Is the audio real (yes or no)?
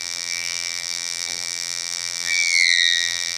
no